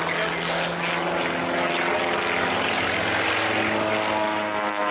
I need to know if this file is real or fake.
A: real